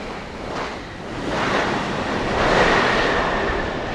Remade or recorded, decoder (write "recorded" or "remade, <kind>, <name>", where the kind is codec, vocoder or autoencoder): recorded